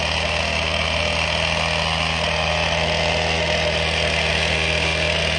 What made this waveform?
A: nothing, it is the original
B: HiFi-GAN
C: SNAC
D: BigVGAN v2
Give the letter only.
A